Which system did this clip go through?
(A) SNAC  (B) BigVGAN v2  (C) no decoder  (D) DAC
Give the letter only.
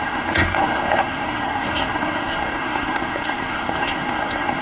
A